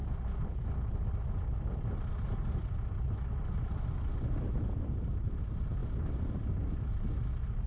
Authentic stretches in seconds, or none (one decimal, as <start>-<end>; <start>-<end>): 0.0-7.7